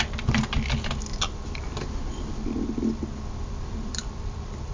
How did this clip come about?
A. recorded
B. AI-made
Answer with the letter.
B